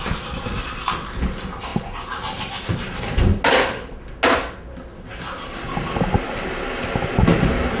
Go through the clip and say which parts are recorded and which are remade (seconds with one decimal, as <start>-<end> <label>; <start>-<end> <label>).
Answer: 0.0-7.8 recorded